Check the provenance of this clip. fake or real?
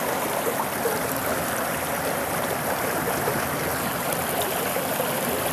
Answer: fake